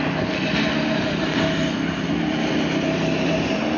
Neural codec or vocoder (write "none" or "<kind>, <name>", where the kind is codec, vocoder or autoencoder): none